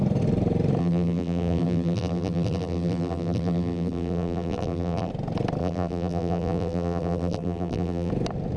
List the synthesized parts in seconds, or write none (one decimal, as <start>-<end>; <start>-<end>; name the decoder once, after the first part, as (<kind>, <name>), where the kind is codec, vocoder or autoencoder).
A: 0.8-5.1 (vocoder, BigVGAN v2); 5.6-8.1